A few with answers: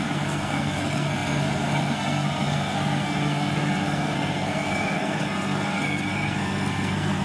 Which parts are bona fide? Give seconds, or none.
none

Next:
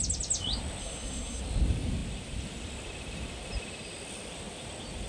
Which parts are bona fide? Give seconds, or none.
0.0-0.8; 1.4-5.1

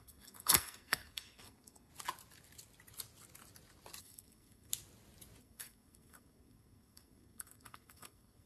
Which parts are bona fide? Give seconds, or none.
1.9-4.0; 4.7-5.4

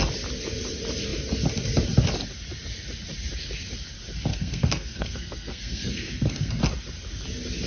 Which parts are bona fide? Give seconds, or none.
0.0-4.3; 6.6-7.7

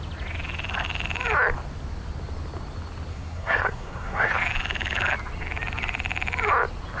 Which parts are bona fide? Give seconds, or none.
0.0-3.1; 4.3-7.0